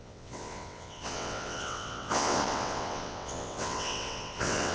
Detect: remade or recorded remade